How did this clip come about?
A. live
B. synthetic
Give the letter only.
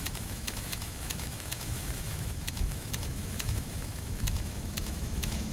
B